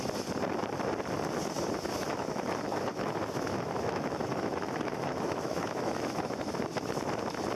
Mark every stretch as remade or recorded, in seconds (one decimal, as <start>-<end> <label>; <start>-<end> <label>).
0.0-2.0 recorded; 2.0-6.6 remade; 6.6-7.6 recorded